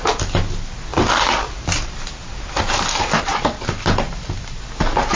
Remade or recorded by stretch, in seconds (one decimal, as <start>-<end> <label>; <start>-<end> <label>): 0.0-0.9 recorded; 0.9-3.2 remade; 3.2-5.2 recorded